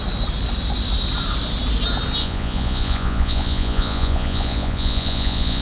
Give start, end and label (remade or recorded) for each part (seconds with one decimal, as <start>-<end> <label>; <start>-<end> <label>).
0.0-2.2 recorded; 2.2-5.6 remade